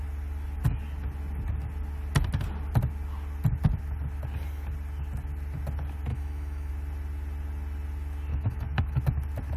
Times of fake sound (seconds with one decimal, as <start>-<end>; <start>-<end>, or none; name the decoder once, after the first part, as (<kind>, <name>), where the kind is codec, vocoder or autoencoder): 6.1-6.7 (autoencoder, DAC-VAE); 8.3-9.0